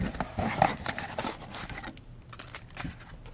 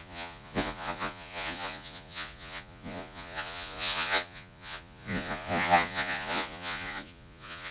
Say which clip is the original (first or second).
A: first